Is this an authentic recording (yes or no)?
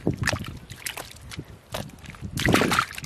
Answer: yes